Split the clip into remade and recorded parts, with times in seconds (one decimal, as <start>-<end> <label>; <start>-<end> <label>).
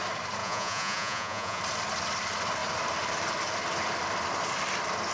0.0-0.4 recorded; 0.4-1.6 remade; 1.6-5.1 recorded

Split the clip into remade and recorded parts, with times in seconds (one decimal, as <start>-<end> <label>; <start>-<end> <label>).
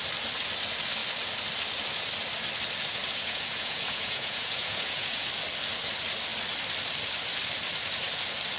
0.0-3.0 recorded; 3.0-5.3 remade; 5.3-8.6 recorded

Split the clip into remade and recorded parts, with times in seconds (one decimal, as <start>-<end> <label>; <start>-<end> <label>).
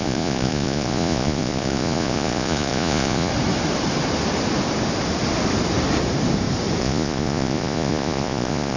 0.0-3.3 remade; 3.3-6.8 recorded; 6.8-8.8 remade